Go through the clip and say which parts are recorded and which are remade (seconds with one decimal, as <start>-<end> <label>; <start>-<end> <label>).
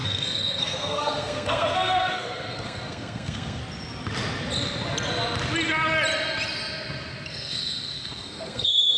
0.0-3.6 remade; 3.6-7.3 recorded; 7.3-9.0 remade